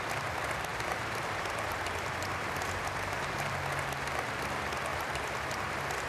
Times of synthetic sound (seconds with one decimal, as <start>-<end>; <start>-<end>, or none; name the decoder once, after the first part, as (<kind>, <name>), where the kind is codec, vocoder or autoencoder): 0.7-3.5 (vocoder, BigVGAN v2); 4.9-6.1